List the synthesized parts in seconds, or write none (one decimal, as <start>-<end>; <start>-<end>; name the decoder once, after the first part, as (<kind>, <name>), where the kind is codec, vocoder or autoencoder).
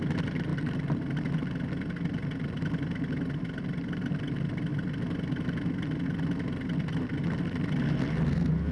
none